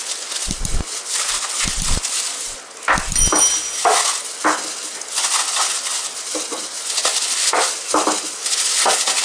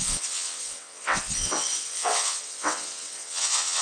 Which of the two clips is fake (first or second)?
second